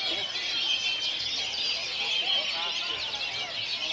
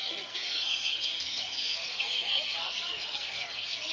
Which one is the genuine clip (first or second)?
first